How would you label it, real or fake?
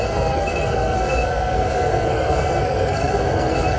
fake